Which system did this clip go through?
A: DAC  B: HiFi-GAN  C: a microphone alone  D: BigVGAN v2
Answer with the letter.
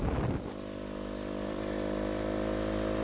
C